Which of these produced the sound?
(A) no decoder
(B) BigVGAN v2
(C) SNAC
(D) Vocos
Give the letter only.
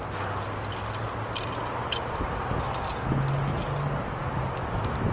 A